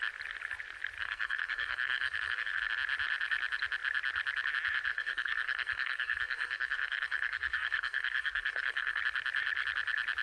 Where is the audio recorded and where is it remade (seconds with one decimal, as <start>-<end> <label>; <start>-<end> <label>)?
0.0-1.0 recorded; 1.0-2.6 remade; 2.6-4.9 recorded; 4.9-9.0 remade; 9.0-10.2 recorded